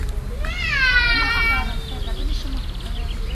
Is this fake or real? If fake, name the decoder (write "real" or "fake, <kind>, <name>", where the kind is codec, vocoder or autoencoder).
real